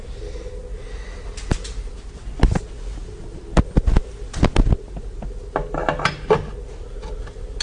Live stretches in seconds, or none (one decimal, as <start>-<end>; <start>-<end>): 0.0-7.6

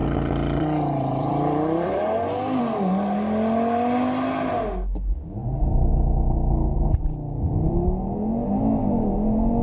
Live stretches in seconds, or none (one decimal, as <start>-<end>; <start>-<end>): 2.6-5.4; 5.9-9.6

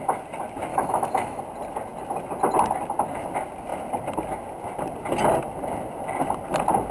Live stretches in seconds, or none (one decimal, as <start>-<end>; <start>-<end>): 0.0-0.7; 1.4-6.9